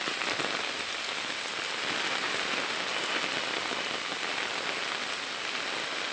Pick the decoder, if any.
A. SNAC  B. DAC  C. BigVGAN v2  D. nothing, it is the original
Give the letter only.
D